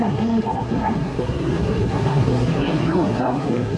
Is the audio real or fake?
fake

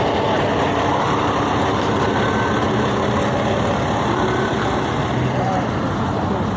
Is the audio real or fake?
real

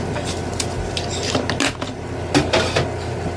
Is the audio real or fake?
real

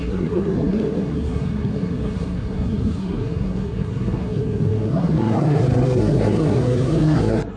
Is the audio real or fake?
fake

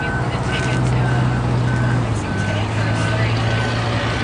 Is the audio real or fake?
real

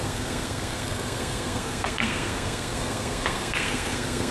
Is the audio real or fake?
fake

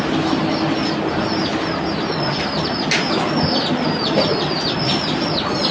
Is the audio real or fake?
real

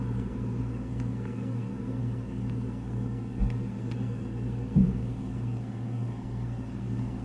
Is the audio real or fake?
fake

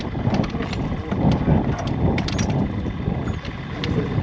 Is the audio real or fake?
real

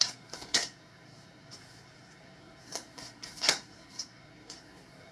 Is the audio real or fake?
fake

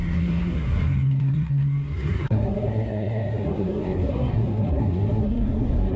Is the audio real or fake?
fake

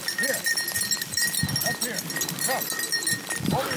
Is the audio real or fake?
real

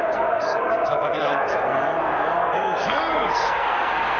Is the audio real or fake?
fake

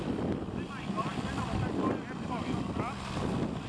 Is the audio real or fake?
real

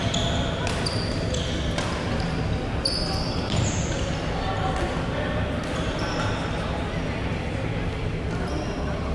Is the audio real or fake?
real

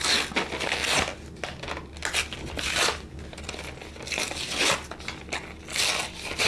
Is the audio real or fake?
real